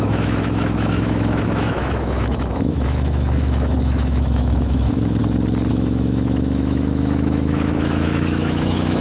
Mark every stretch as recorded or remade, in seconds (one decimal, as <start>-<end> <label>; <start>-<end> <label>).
0.0-5.2 remade; 5.2-5.7 recorded; 5.7-9.0 remade